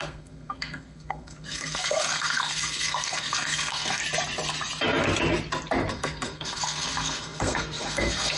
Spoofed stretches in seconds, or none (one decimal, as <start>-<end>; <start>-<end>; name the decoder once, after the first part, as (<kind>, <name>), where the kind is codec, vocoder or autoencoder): 0.0-4.0 (codec, SNAC); 5.9-8.4